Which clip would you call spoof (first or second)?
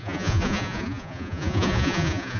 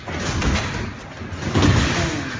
first